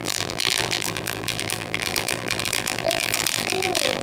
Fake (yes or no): yes